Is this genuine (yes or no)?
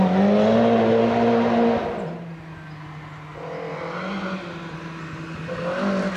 yes